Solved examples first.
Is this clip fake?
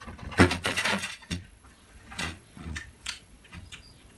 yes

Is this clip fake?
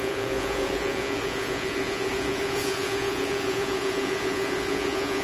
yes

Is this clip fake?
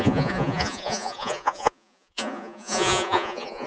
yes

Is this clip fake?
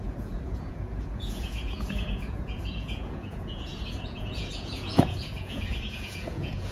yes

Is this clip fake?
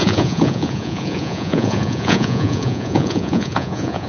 yes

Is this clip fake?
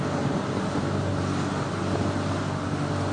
no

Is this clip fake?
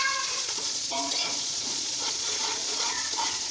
yes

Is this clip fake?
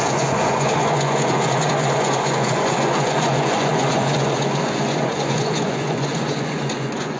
yes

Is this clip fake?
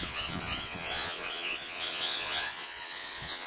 yes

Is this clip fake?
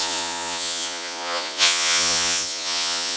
yes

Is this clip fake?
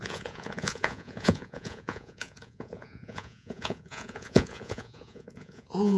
yes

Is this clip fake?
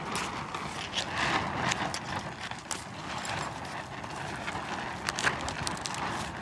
no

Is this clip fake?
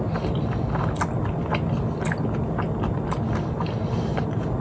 no